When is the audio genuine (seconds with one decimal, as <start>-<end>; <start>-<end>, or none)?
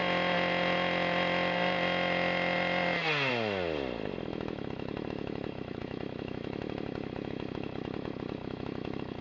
0.0-4.3